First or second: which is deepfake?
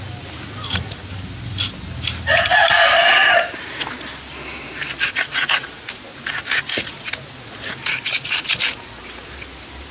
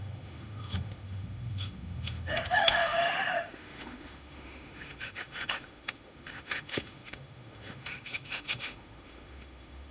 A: second